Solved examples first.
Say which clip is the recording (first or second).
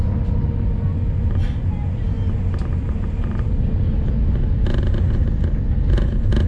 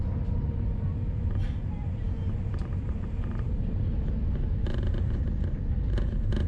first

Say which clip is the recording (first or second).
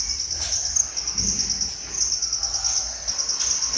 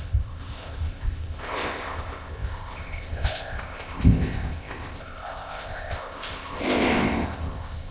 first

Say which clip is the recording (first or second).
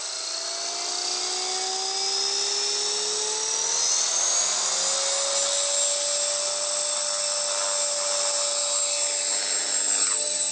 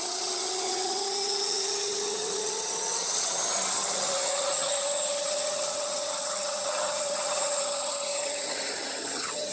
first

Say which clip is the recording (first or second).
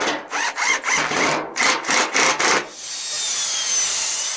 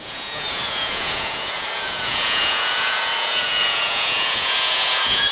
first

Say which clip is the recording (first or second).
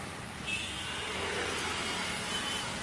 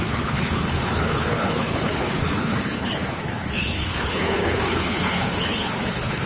first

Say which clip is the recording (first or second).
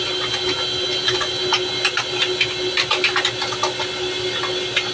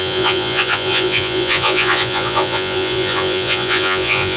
first